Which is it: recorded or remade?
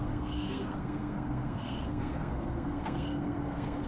remade